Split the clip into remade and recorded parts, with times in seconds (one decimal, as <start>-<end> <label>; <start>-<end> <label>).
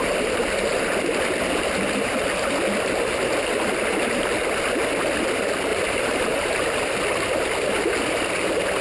0.0-3.5 recorded; 3.5-4.2 remade; 4.2-5.7 recorded; 5.7-6.7 remade; 6.7-8.8 recorded